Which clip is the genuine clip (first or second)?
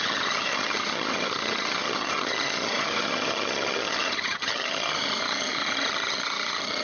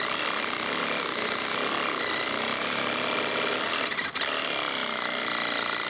second